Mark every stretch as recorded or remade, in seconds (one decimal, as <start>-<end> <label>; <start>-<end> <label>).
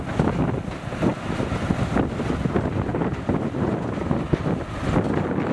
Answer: 0.0-1.1 recorded; 1.1-1.7 remade; 1.7-2.9 recorded; 2.9-3.7 remade; 3.7-5.5 recorded